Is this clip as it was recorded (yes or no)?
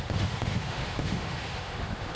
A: no